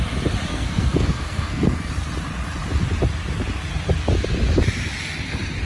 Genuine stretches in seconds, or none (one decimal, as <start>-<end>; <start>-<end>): 0.0-0.5; 1.9-5.6